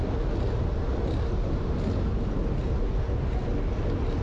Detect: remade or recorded recorded